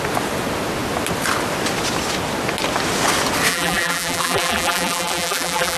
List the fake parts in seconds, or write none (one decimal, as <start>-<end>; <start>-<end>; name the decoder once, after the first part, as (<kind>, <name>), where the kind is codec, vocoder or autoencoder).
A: 3.5-5.8 (vocoder, BigVGAN v2)

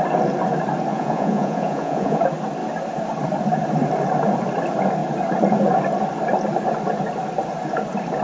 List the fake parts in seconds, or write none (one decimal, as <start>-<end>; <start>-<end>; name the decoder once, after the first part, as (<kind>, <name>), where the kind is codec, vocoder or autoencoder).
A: 0.9-2.2 (vocoder, Vocos)

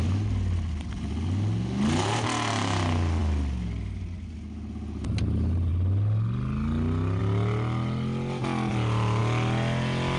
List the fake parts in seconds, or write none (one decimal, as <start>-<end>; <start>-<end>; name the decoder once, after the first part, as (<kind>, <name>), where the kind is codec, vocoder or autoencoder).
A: none